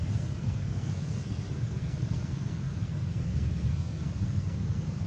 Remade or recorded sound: remade